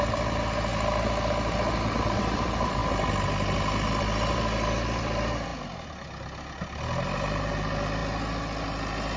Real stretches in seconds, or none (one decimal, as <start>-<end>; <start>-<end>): 0.7-1.3; 2.8-4.0; 5.5-7.4; 8.0-9.2